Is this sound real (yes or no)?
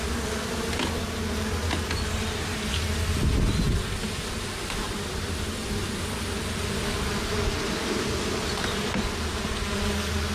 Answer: yes